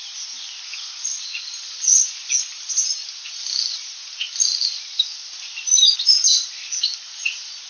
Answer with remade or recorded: recorded